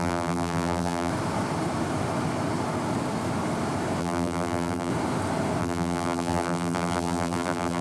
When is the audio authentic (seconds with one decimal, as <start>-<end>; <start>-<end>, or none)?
1.1-4.0; 4.9-5.6